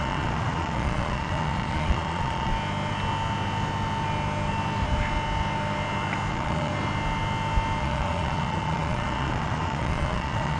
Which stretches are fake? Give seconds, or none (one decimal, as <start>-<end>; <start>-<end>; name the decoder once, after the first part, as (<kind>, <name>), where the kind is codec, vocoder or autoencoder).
0.0-2.5 (vocoder, Vocos); 6.3-6.7; 7.8-10.6